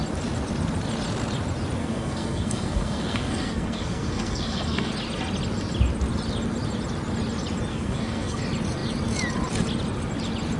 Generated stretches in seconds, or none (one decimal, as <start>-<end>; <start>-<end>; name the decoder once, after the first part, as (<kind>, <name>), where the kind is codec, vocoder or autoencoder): 1.8-4.9 (codec, SNAC); 7.7-8.4

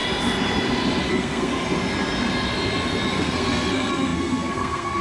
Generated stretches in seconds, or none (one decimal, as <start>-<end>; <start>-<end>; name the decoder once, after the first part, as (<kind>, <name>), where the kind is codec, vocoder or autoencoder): 1.1-1.5 (codec, SNAC); 3.1-5.0

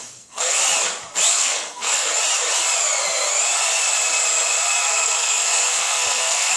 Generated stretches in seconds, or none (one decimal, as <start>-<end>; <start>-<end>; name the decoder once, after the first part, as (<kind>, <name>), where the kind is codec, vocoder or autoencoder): 0.0-0.6 (codec, SNAC); 1.3-2.1; 4.8-6.6

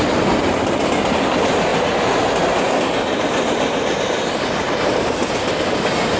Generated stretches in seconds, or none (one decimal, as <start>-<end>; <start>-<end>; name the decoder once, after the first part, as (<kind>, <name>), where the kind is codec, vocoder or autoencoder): none

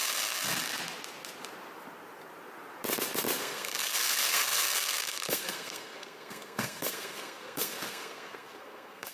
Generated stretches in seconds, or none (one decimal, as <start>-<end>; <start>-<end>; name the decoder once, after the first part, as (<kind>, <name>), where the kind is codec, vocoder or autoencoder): 3.4-9.1 (codec, SNAC)